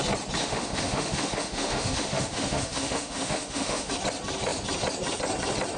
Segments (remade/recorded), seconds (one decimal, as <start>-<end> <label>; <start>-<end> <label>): 0.0-0.4 recorded; 0.4-3.9 remade; 3.9-5.8 recorded

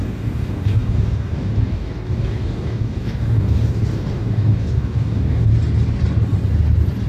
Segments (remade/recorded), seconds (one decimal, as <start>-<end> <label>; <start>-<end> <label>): 0.0-5.5 remade; 5.5-7.1 recorded